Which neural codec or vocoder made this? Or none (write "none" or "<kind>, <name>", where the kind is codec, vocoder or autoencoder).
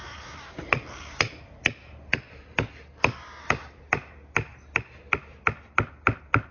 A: none